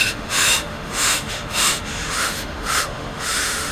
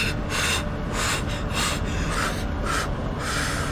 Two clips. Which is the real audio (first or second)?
second